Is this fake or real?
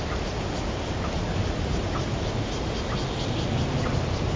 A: real